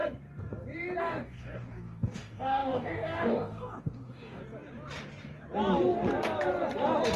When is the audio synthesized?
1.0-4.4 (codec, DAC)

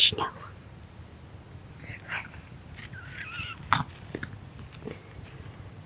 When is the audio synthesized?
none

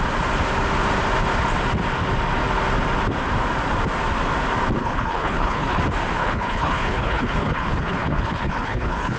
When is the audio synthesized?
4.8-5.8 (codec, HILCodec); 6.2-9.2

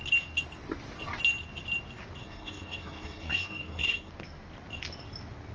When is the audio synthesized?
2.2-4.1 (codec, SNAC)